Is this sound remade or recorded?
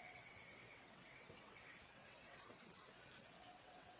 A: remade